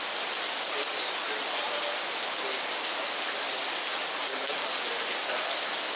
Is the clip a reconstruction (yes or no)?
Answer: no